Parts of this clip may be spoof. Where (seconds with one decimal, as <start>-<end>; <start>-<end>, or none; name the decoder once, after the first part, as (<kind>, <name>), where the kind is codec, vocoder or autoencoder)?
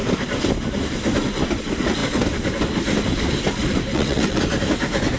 3.9-4.4 (vocoder, WaveNeXt)